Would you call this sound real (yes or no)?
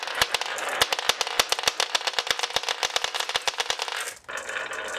yes